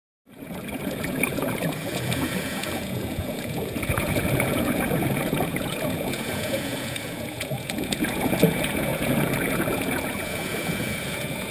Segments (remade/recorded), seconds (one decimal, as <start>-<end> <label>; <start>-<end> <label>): 0.0-11.5 remade